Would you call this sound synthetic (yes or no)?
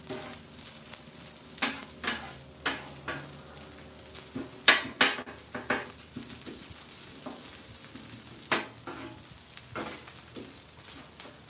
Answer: no